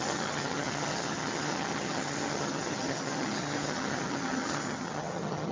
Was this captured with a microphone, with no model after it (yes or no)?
no